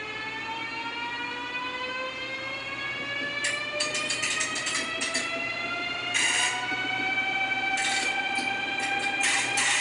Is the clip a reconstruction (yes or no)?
yes